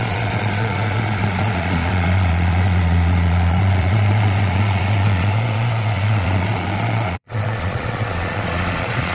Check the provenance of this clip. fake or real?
fake